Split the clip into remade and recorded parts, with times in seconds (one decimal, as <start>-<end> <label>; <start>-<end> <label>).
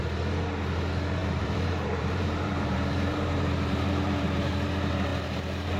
0.0-1.2 recorded; 1.2-4.5 remade; 4.5-5.8 recorded